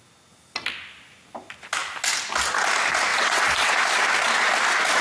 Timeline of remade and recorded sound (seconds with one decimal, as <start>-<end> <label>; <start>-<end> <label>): 0.0-3.1 recorded; 3.1-3.7 remade; 3.7-5.0 recorded